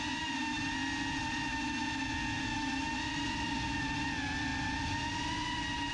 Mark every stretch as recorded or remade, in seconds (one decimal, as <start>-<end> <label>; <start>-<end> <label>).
0.0-5.9 recorded